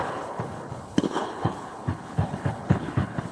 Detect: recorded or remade remade